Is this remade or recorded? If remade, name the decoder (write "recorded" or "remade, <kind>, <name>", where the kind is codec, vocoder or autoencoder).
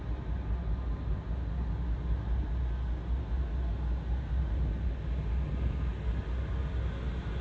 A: recorded